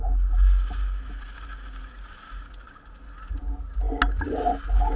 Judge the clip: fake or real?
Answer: real